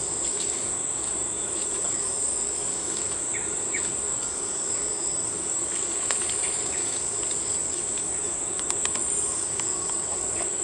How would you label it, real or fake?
fake